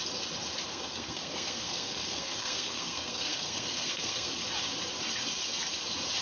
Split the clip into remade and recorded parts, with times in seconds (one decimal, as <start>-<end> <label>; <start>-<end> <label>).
0.0-0.7 recorded; 0.7-4.3 remade; 4.3-6.2 recorded